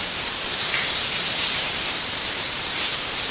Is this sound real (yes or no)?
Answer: no